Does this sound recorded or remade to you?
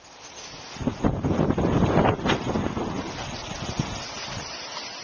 recorded